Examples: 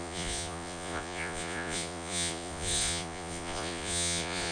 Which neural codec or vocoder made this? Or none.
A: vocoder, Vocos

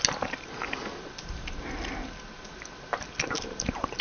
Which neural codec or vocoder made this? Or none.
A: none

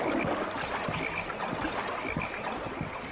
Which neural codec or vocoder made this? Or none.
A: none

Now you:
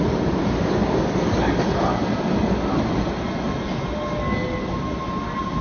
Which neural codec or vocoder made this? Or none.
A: none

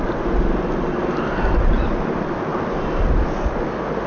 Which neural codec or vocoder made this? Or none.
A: none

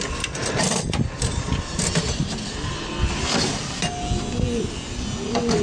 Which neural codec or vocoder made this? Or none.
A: none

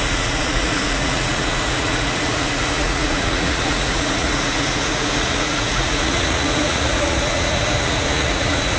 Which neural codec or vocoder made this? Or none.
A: vocoder, Vocos